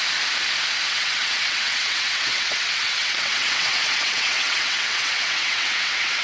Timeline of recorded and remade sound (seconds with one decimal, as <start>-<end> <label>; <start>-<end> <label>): 0.0-0.9 recorded; 0.9-6.2 remade